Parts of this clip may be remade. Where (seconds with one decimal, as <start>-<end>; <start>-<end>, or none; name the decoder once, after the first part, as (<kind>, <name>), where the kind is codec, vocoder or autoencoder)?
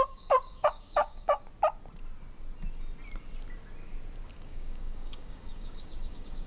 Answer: 0.0-1.4 (codec, DAC); 4.4-6.5